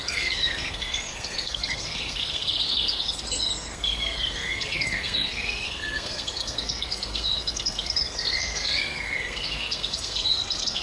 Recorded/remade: remade